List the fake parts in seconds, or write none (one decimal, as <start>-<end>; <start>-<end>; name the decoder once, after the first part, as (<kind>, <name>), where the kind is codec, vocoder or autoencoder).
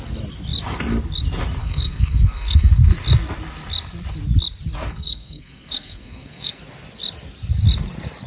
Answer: 1.6-2.7 (codec, SNAC); 4.9-6.6